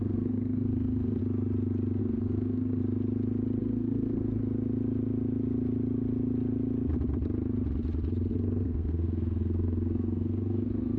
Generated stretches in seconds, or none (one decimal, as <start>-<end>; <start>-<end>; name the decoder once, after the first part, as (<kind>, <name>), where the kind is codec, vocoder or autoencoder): 0.0-1.2 (codec, SNAC); 2.0-2.8; 3.6-4.4; 8.3-11.0